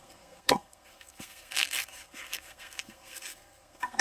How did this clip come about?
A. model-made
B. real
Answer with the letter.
A